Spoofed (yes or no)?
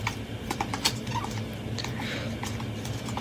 no